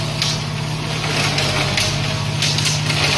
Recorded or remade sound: recorded